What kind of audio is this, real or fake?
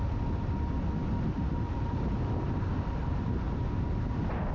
real